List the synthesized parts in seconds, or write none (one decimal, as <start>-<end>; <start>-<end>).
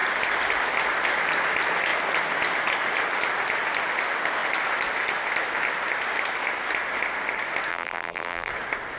7.7-8.5